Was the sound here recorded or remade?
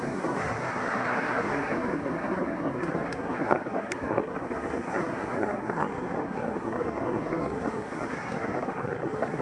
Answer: remade